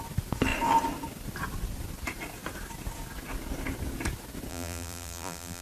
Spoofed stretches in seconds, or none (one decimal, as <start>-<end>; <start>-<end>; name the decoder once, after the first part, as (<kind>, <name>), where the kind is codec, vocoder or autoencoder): 4.5-5.6 (vocoder, BigVGAN v2)